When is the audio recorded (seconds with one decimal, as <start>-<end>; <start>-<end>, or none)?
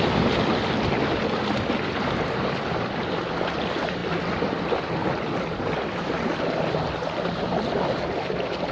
0.0-8.7